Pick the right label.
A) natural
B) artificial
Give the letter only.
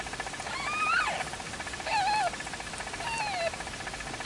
A